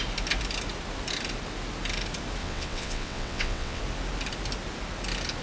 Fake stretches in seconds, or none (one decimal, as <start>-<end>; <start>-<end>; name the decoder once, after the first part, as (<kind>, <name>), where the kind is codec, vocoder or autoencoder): 2.4-3.8 (vocoder, WaveNeXt)